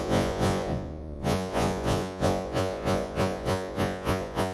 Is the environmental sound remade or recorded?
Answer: remade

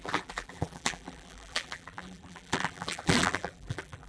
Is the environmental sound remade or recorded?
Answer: remade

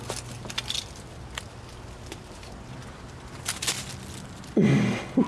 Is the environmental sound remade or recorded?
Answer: recorded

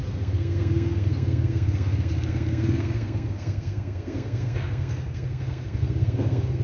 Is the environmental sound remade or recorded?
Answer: remade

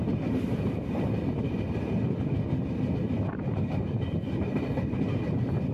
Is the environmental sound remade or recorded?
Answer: recorded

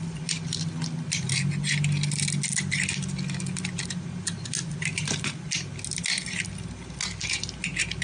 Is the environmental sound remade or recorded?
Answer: recorded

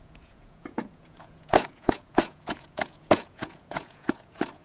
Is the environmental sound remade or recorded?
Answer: remade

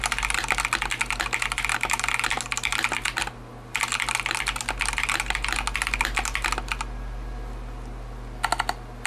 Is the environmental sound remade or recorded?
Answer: recorded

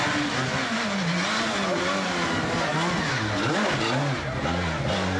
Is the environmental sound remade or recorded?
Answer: recorded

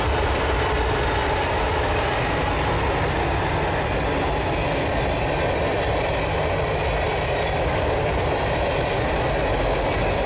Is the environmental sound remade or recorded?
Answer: recorded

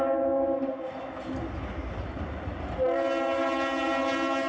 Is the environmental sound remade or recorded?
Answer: recorded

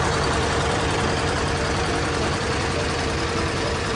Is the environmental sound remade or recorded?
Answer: remade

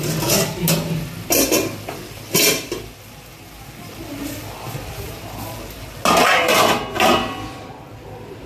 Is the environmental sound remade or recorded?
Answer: recorded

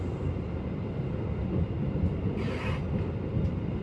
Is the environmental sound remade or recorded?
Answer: recorded